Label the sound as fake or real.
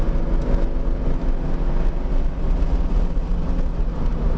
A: real